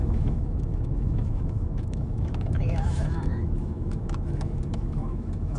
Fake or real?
fake